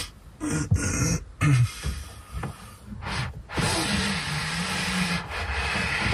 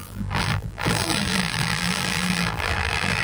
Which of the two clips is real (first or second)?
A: first